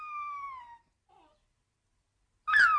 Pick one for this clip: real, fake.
real